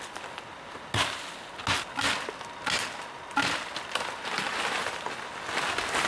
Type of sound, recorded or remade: recorded